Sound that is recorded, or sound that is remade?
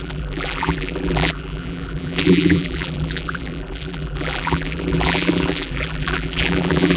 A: remade